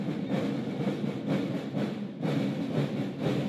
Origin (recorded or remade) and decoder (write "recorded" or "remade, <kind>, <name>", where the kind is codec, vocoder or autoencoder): recorded